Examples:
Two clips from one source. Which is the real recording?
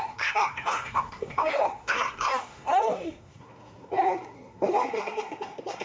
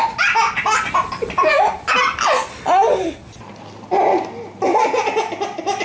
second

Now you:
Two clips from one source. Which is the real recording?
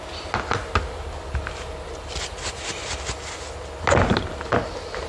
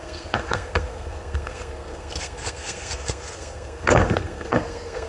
first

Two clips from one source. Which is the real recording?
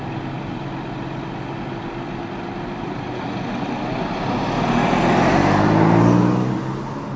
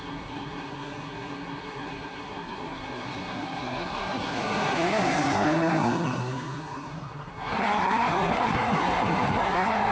first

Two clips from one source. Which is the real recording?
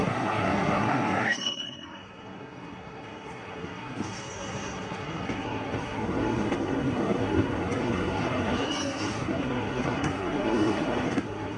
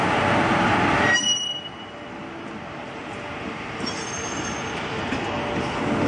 second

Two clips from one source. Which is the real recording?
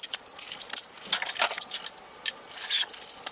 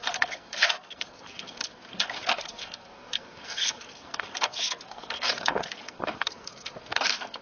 first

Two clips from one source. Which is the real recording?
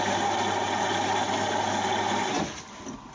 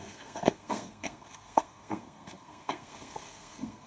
first